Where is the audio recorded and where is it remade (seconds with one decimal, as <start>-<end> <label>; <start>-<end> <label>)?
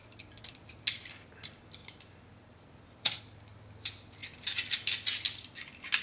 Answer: 0.0-0.7 remade; 0.7-1.8 recorded; 1.8-3.2 remade; 3.2-6.0 recorded